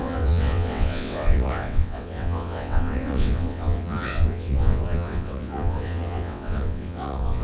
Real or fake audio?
fake